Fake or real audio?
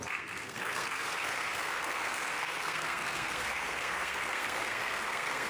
fake